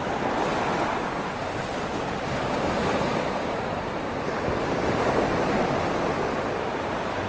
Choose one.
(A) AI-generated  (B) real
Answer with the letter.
B